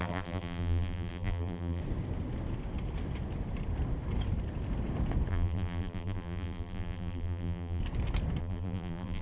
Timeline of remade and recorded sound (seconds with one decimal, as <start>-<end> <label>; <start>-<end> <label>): 0.0-1.8 remade; 1.8-5.3 recorded; 5.3-7.8 remade; 7.8-8.4 recorded; 8.4-9.2 remade